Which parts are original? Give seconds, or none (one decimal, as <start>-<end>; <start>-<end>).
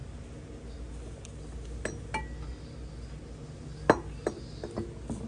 0.0-5.3